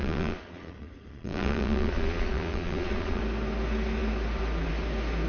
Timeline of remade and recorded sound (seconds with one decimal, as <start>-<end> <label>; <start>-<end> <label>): 0.0-3.2 remade; 3.2-5.3 recorded